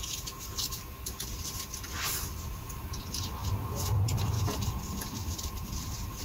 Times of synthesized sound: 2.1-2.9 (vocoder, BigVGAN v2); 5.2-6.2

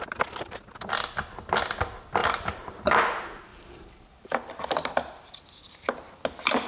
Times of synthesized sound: 2.2-3.0 (vocoder, BigVGAN v2); 3.5-4.6

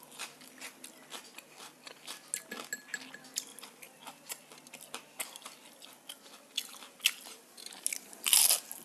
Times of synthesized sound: none

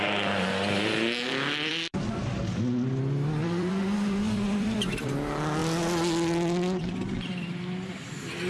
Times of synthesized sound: 1.7-2.4 (vocoder, BigVGAN v2); 3.4-5.1

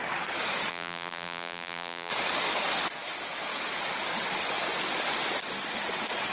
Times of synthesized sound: 0.7-2.1 (vocoder, BigVGAN v2)